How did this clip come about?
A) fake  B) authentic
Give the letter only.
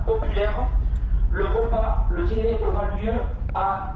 A